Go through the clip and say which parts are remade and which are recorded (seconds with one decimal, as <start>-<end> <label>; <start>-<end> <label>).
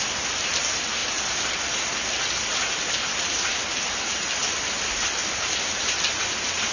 0.0-1.0 recorded; 1.0-1.5 remade; 1.5-6.7 recorded